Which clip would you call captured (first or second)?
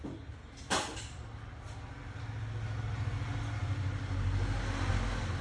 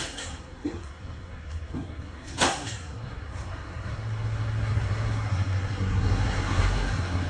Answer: first